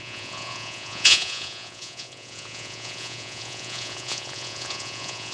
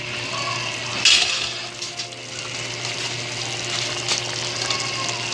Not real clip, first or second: first